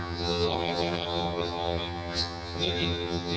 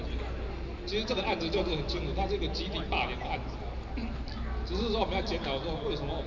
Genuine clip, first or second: second